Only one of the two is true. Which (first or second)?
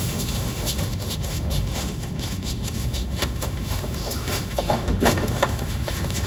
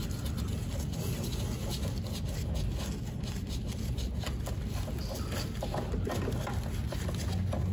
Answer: second